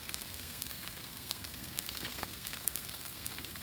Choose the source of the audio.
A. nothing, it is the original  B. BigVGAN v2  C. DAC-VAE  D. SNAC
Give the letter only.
D